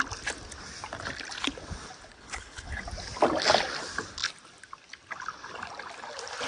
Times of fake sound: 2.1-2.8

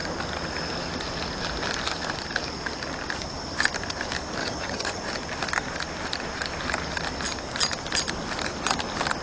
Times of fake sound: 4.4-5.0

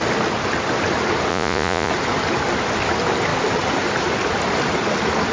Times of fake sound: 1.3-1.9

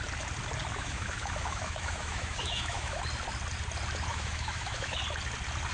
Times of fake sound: 0.7-3.0; 4.1-5.0

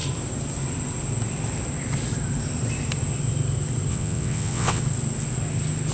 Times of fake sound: 3.9-4.8

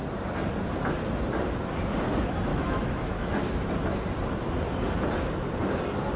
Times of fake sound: 2.5-3.7